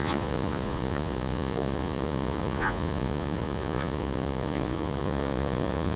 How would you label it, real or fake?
fake